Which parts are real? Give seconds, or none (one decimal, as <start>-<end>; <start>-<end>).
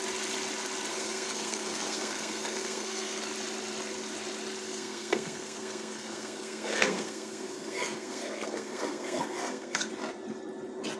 0.0-0.9; 3.2-4.6; 9.9-11.0